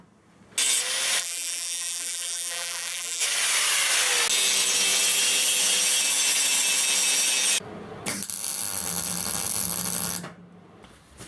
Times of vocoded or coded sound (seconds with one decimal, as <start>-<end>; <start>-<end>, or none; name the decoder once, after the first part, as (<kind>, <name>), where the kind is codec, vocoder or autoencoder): 1.2-3.2 (vocoder, BigVGAN v2)